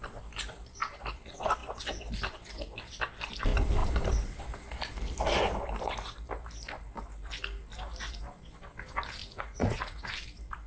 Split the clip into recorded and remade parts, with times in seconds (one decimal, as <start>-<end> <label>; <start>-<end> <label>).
0.0-9.2 recorded; 9.2-10.1 remade; 10.1-10.7 recorded